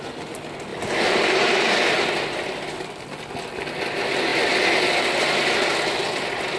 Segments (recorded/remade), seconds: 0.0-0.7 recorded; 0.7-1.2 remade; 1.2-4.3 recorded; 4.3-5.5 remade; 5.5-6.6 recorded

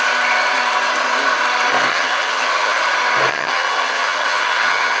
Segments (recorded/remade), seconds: 0.0-1.9 recorded; 1.9-2.8 remade; 2.8-3.3 recorded; 3.3-5.0 remade

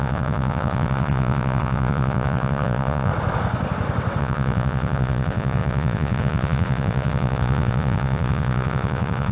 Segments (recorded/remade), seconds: 0.0-3.1 remade; 3.1-4.2 recorded; 4.2-9.3 remade